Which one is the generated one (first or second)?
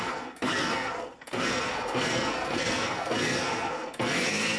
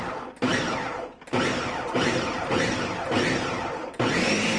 first